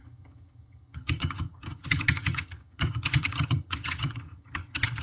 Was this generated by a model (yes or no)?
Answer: yes